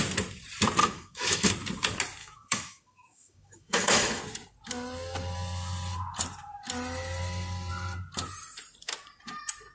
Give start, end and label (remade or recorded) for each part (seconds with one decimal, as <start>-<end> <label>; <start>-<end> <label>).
0.0-0.8 recorded; 0.8-1.5 remade; 1.5-2.2 recorded; 2.2-4.2 remade; 4.2-9.7 recorded